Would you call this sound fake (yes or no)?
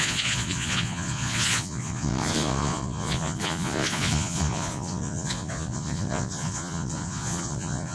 yes